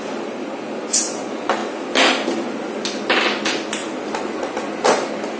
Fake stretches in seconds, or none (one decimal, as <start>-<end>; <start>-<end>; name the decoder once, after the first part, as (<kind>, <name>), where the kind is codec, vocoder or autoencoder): none